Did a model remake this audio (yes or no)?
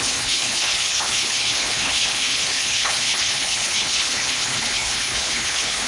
yes